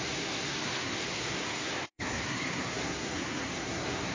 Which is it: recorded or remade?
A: remade